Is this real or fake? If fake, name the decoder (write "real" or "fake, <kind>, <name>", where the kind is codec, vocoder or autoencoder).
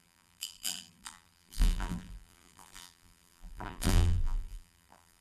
fake, vocoder, BigVGAN v2